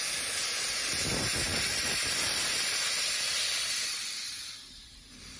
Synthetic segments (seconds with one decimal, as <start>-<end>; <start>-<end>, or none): none